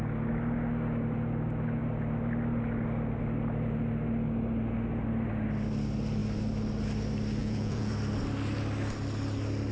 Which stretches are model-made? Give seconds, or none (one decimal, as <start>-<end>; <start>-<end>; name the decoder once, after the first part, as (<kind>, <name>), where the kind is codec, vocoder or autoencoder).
7.4-7.9 (vocoder, Vocos)